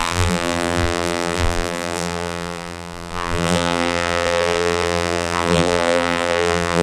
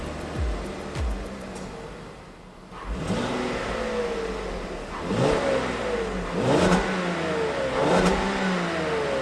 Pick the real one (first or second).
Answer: second